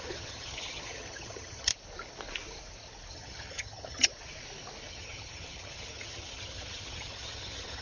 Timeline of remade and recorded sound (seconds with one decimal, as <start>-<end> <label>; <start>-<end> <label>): 0.0-1.7 remade; 1.7-3.1 recorded; 3.1-4.1 remade; 4.1-4.9 recorded; 4.9-7.8 remade